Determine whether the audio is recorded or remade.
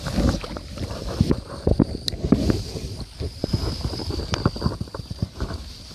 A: remade